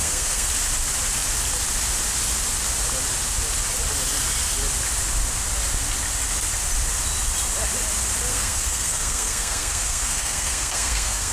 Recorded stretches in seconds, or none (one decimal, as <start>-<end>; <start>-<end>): 0.5-8.3